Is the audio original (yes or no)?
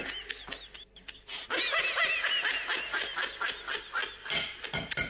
yes